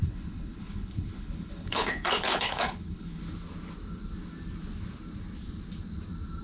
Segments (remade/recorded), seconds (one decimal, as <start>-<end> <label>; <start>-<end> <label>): 0.0-3.2 remade; 3.2-6.4 recorded